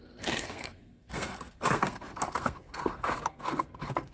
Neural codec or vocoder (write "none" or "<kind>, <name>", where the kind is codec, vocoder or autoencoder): codec, SNAC